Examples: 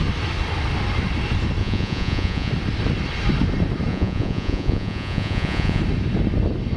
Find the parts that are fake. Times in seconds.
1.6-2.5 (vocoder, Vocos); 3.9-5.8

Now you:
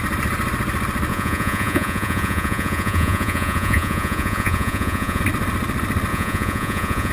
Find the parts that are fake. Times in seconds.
1.1-5.2 (vocoder, Vocos); 6.1-7.1

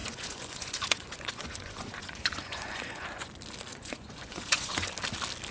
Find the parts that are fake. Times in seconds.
0.0-3.3 (vocoder, Vocos); 3.7-4.9